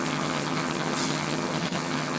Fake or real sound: fake